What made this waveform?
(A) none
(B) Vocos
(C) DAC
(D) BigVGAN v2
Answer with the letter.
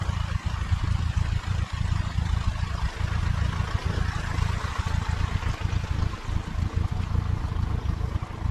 A